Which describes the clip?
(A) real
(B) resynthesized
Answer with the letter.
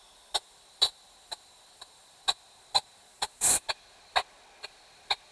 A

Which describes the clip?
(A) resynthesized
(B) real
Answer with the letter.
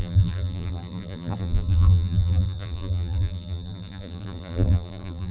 A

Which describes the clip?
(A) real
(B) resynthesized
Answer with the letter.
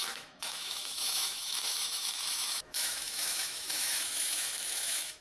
B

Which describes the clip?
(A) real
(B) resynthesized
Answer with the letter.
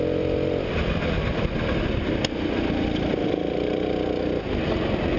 A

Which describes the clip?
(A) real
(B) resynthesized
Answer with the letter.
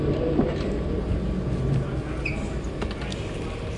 A